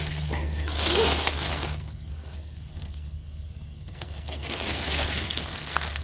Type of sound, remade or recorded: remade